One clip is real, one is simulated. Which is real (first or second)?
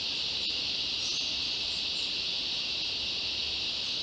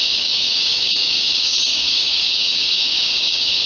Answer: first